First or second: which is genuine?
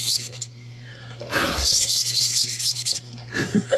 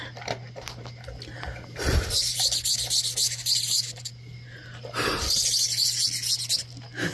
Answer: second